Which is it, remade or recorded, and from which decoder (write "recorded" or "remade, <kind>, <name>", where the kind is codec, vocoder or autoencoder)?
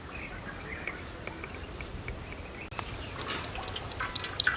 recorded